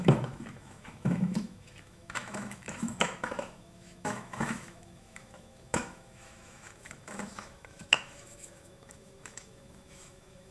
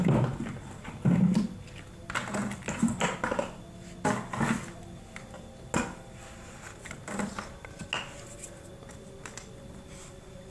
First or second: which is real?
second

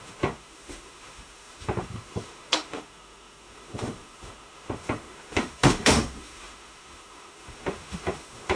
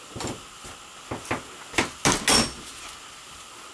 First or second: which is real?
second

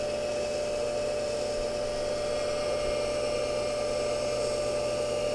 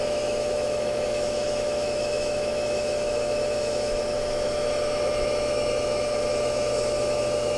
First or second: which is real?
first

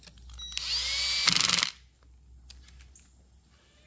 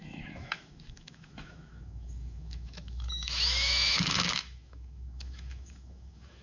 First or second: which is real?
first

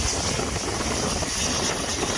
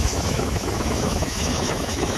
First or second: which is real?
first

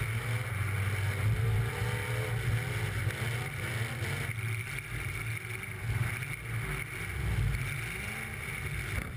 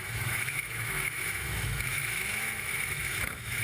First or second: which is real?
first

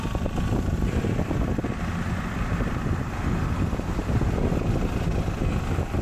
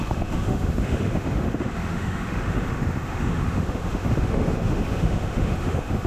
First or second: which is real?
first